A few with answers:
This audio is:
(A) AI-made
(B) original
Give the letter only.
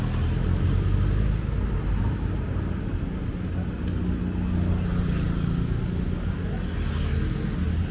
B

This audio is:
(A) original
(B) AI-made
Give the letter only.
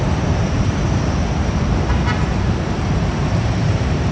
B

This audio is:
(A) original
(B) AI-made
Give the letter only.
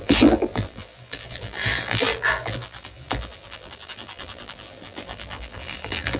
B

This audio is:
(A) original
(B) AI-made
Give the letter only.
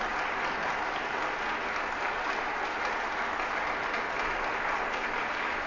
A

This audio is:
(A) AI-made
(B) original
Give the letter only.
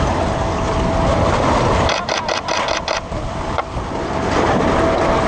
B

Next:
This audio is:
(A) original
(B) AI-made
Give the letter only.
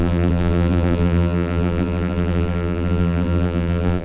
B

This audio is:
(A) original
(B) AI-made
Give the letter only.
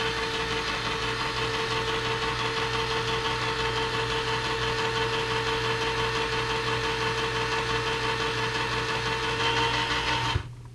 A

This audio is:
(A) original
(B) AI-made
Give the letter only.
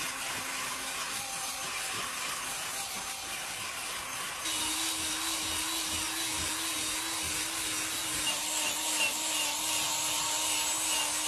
A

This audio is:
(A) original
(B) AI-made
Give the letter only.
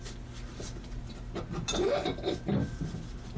A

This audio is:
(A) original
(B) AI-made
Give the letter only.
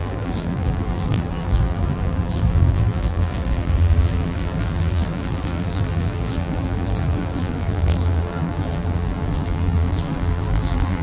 B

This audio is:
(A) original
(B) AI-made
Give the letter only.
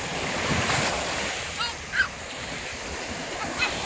A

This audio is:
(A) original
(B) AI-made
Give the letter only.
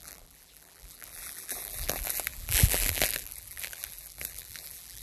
B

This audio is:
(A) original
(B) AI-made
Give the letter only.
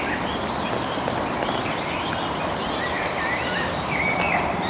A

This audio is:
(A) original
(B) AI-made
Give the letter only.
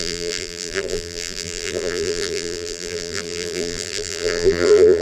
B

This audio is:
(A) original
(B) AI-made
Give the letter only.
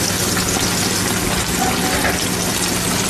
A